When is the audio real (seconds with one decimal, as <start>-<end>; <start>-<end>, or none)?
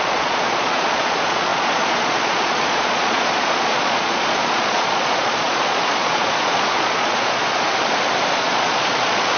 7.4-8.3